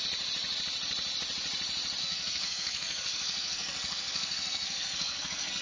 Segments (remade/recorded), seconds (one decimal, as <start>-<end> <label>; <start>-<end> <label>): 0.0-2.0 recorded; 2.0-5.6 remade